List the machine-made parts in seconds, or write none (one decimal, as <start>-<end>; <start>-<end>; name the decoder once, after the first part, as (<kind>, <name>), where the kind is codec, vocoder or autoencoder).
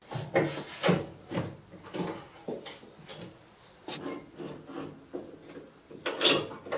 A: 3.1-3.6 (vocoder, BigVGAN v2)